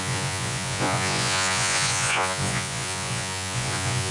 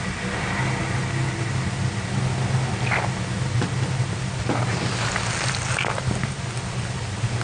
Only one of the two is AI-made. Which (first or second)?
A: first